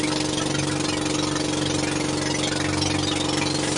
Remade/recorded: recorded